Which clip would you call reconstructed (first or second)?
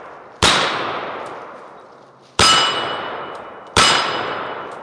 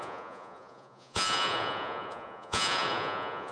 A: second